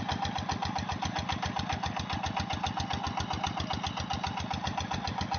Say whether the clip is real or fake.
real